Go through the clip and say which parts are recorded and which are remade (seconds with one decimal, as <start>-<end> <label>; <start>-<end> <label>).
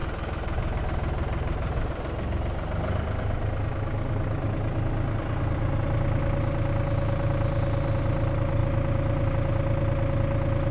0.0-10.7 recorded